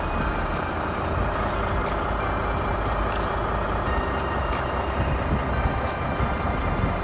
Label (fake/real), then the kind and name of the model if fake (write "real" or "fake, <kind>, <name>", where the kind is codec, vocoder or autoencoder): real